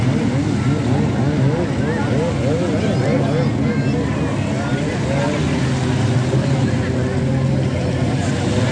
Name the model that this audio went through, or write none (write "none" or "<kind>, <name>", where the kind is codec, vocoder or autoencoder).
none